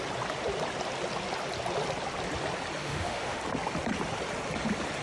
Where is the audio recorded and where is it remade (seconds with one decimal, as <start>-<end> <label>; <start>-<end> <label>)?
0.0-2.8 recorded; 2.8-3.4 remade; 3.4-5.0 recorded